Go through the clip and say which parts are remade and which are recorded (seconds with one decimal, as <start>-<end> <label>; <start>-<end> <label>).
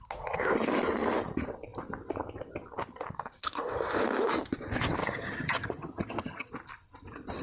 0.0-5.0 recorded; 5.0-6.5 remade; 6.5-7.4 recorded